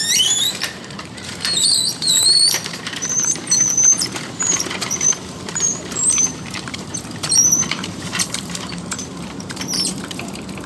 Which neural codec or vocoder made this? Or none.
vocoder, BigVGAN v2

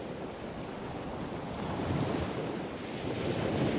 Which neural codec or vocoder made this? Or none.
none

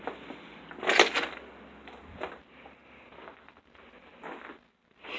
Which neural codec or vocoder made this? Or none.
none